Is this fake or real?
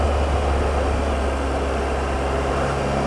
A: real